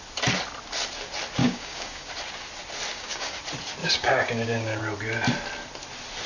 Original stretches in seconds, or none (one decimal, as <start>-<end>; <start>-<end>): 0.0-1.4; 2.1-2.9; 3.4-3.8; 4.8-6.3